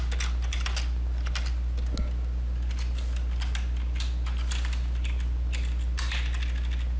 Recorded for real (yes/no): yes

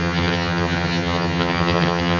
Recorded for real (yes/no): no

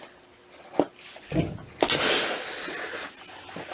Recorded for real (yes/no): yes